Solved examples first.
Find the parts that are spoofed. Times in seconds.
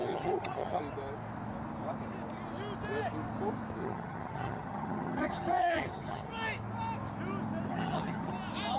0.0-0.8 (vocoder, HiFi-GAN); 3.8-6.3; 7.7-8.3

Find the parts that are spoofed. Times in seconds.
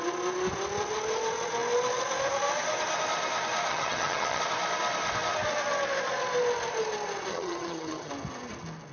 3.7-4.4 (vocoder, HiFi-GAN); 7.3-8.1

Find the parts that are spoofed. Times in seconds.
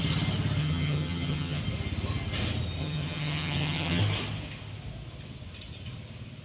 0.6-1.6 (vocoder, HiFi-GAN); 2.8-4.0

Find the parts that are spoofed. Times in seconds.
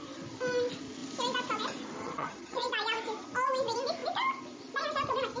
2.0-2.7 (vocoder, HiFi-GAN)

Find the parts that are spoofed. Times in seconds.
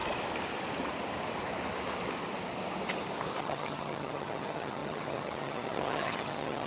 3.4-6.7 (vocoder, HiFi-GAN)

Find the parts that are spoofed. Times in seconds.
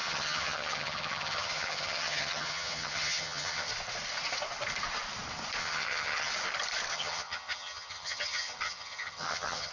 0.0-3.7 (vocoder, HiFi-GAN); 5.6-6.3; 6.9-9.7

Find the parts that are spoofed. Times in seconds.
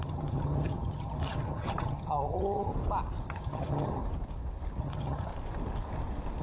0.0-2.7 (vocoder, HiFi-GAN); 3.3-4.0; 4.8-5.3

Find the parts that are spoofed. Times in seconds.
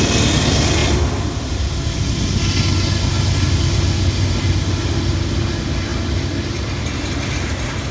none